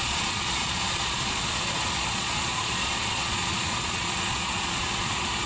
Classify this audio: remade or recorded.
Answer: remade